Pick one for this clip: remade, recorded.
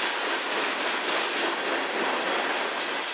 recorded